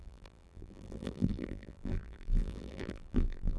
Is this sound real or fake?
fake